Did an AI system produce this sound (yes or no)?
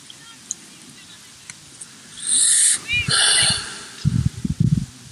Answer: no